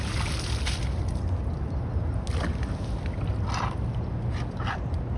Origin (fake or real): real